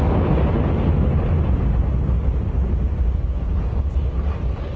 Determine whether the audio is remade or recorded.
recorded